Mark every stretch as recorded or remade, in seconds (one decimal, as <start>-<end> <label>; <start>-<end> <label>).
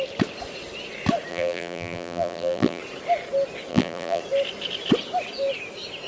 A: 0.0-1.3 recorded; 1.3-2.8 remade; 2.8-3.7 recorded; 3.7-4.2 remade; 4.2-6.1 recorded